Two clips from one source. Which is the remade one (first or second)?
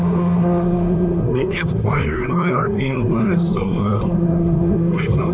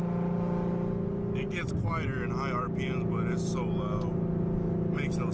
first